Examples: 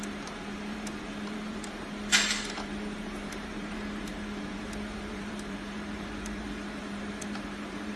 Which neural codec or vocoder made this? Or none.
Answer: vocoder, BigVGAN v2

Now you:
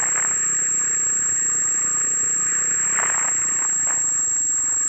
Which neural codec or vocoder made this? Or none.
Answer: none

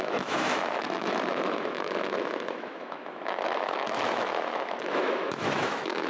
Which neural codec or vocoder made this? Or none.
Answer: autoencoder, DAC-VAE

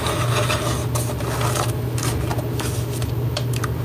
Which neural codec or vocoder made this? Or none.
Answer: none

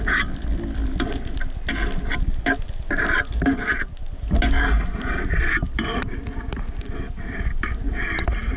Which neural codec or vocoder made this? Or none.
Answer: none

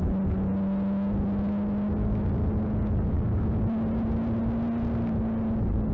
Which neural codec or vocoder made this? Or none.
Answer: none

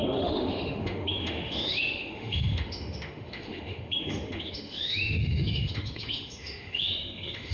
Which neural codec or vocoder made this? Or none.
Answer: autoencoder, DAC-VAE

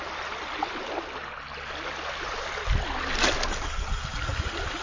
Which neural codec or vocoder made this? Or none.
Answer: none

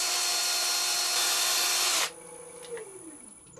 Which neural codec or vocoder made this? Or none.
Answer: none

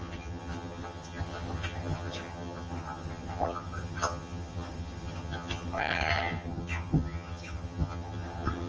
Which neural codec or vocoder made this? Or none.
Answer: vocoder, HiFi-GAN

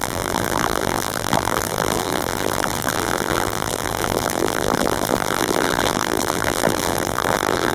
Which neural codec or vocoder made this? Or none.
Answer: vocoder, BigVGAN v2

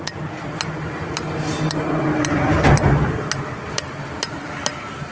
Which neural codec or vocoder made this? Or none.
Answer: none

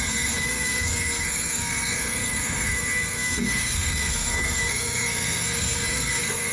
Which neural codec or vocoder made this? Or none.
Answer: codec, SNAC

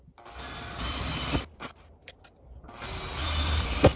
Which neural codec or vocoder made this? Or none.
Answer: none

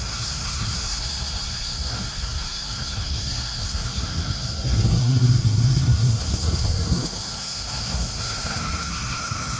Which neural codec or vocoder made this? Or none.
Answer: codec, SNAC